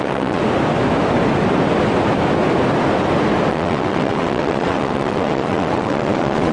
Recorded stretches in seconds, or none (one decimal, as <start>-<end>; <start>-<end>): 0.4-3.5